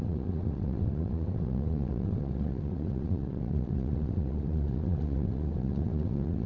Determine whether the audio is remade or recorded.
remade